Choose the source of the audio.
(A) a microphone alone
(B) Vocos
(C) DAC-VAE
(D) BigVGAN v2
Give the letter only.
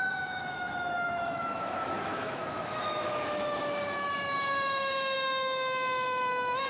C